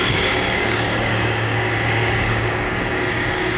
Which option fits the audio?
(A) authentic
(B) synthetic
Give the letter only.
B